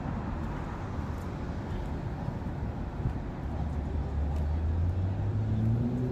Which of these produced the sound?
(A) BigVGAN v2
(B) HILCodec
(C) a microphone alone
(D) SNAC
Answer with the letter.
C